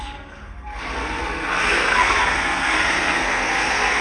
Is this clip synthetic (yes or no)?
yes